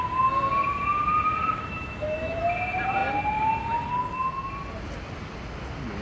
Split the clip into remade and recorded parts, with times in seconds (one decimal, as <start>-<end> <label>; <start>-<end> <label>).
0.0-1.4 recorded; 1.4-2.4 remade; 2.4-6.0 recorded